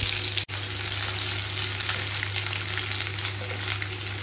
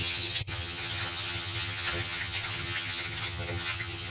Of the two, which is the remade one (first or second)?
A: second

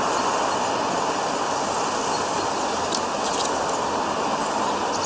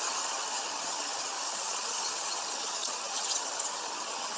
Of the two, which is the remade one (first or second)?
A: second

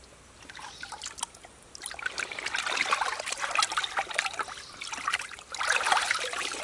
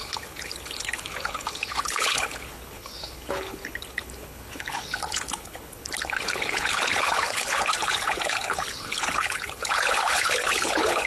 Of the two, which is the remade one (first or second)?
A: second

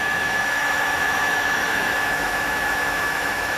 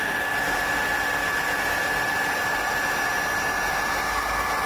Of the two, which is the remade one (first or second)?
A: first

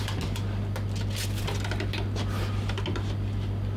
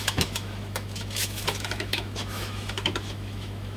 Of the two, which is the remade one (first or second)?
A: second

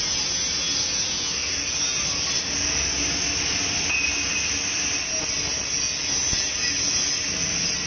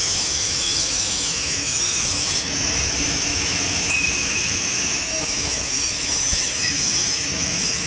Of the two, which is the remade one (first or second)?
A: second